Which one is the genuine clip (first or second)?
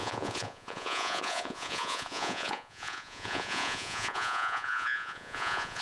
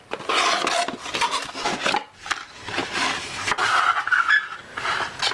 second